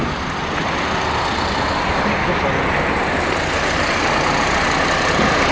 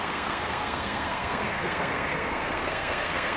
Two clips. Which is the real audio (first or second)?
first